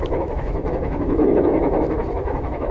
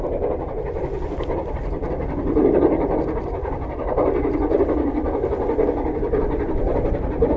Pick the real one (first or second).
second